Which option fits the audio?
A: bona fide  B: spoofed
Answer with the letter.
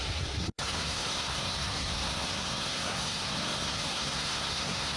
B